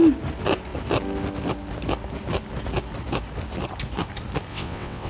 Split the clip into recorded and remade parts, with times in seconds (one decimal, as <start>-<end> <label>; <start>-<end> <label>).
0.0-4.5 recorded; 4.5-5.1 remade